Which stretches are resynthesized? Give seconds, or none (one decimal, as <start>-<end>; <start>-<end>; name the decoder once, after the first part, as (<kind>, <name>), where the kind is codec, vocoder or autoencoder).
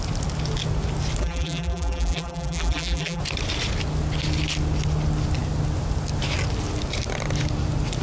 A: 1.2-3.2 (vocoder, BigVGAN v2)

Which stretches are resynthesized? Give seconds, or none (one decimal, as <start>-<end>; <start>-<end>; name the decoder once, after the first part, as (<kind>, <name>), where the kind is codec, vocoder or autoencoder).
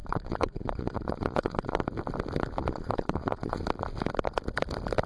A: 0.0-1.8 (vocoder, Vocos); 2.6-3.6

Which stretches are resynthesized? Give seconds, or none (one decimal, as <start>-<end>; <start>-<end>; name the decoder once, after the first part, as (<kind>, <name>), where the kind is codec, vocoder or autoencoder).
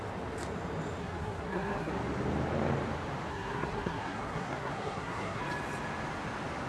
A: 1.0-1.9 (codec, SNAC); 3.3-5.4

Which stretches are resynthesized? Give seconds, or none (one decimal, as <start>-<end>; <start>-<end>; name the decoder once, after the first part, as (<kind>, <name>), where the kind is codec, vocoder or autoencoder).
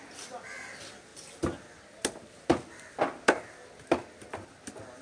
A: none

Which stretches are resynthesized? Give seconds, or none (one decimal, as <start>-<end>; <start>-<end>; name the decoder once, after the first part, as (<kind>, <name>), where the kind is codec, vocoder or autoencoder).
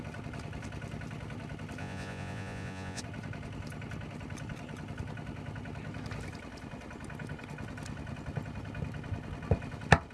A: 1.8-3.0 (vocoder, Vocos)